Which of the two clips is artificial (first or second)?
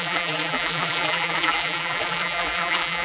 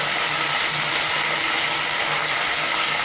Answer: first